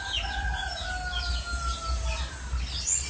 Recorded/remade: recorded